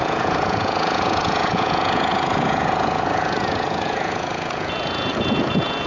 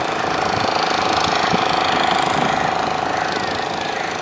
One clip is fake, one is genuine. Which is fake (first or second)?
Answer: first